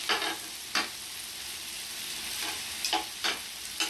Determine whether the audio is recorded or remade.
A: recorded